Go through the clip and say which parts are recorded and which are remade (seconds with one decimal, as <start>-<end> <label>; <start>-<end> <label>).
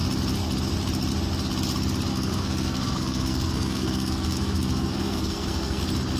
0.0-2.1 recorded; 2.1-5.8 remade; 5.8-6.2 recorded